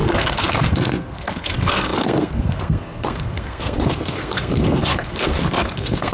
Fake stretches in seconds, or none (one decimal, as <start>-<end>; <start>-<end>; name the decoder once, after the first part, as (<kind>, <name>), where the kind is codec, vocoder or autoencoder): 0.0-6.1 (codec, SNAC)